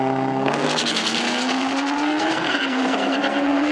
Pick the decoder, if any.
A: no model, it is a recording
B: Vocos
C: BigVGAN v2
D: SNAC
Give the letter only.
D